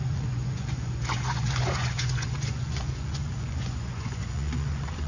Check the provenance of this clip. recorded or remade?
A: remade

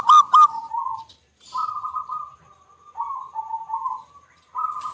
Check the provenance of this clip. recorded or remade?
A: recorded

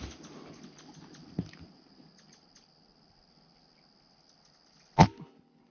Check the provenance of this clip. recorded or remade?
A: recorded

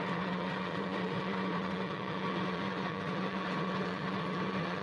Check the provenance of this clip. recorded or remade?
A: remade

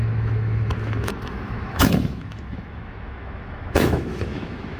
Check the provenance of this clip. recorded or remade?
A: remade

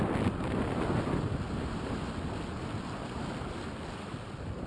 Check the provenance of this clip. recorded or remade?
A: recorded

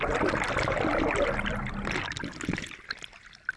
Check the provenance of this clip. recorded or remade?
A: recorded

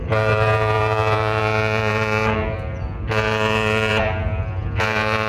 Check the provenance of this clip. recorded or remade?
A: remade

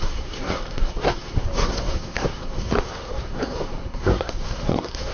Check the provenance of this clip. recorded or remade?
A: remade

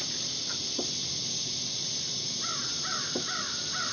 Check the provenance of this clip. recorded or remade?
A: recorded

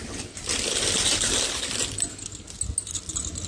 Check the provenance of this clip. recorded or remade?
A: recorded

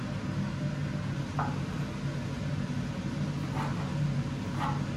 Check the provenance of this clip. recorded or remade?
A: recorded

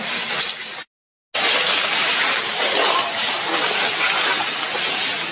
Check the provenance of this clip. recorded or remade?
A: recorded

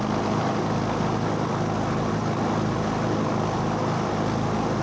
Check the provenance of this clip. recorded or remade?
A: recorded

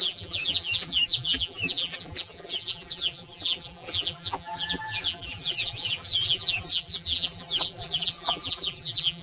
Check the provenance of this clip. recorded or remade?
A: remade